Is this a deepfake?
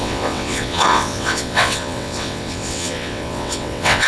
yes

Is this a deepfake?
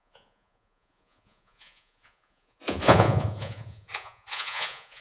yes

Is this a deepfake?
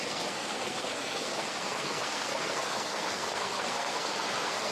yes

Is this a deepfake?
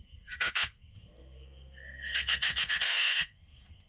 yes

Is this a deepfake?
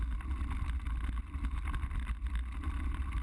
no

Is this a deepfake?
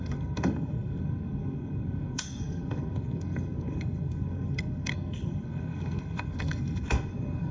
yes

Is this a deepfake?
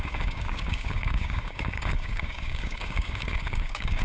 yes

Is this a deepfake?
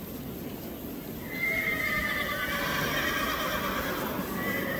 no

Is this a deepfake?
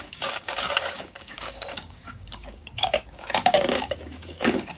yes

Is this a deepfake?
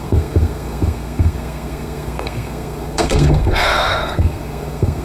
yes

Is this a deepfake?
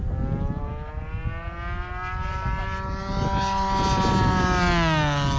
no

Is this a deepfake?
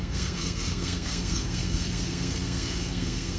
yes